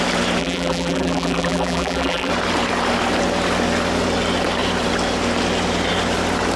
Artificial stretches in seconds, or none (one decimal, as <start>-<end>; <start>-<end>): 0.4-2.3